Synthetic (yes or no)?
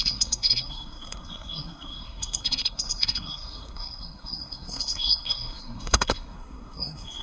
yes